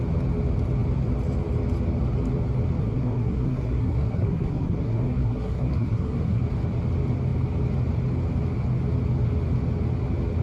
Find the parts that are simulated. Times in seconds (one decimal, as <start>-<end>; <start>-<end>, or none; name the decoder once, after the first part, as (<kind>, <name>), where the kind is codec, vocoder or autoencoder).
2.8-6.4 (codec, SNAC)